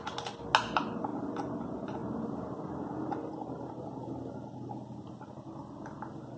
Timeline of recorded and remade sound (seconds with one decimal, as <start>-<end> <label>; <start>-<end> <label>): 0.0-6.4 recorded